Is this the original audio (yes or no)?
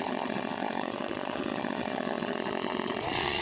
no